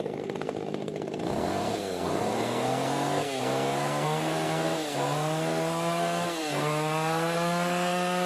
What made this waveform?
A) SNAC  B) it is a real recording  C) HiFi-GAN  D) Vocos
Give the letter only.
A